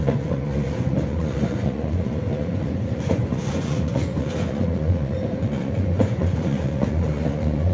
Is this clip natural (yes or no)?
no